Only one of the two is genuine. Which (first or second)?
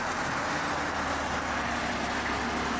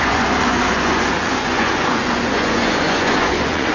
first